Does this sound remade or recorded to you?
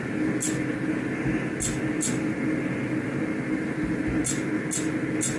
recorded